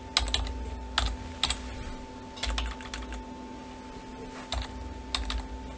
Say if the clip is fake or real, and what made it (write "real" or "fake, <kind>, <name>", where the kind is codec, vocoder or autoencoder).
real